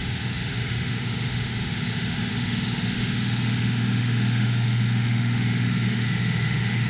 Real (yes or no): no